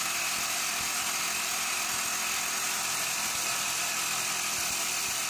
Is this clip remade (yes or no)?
no